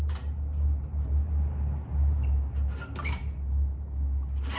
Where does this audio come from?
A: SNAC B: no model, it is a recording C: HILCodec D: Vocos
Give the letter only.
B